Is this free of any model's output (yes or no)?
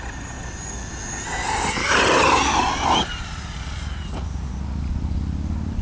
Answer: yes